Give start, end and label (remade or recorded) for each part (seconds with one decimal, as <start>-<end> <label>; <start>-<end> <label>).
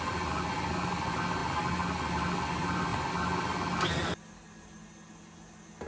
0.0-5.9 recorded